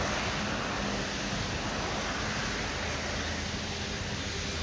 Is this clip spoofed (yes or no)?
no